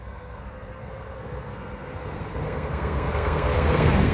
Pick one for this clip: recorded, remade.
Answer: remade